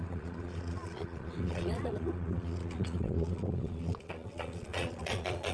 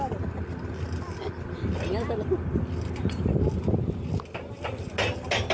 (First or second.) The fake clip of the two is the first